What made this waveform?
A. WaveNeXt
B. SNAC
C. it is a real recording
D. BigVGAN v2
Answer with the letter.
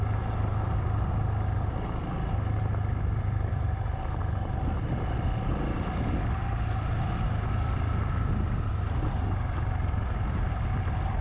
C